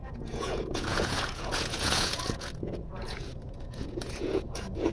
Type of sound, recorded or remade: remade